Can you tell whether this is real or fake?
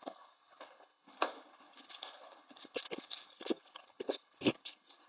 fake